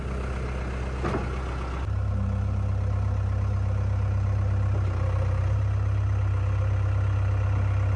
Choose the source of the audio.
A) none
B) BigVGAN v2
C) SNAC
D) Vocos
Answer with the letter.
A